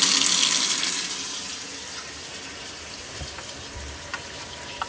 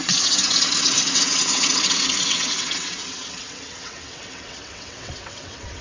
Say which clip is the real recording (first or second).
first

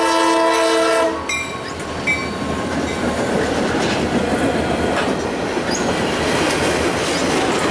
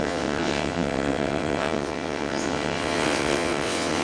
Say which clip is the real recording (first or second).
first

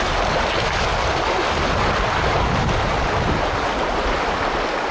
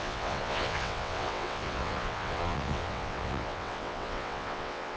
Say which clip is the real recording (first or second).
first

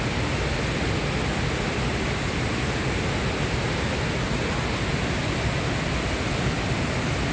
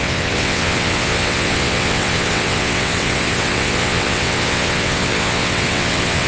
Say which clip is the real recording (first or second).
first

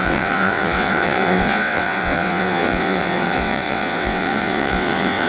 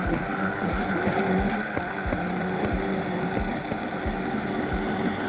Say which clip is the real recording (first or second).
second